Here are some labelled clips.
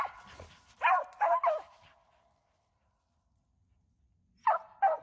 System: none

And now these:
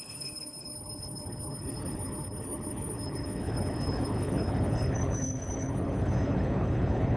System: codec, HILCodec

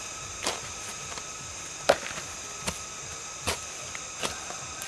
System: none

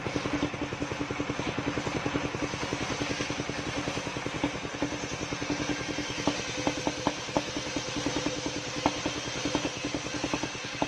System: none